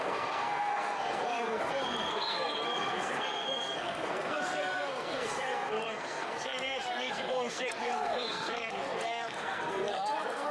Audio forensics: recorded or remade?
remade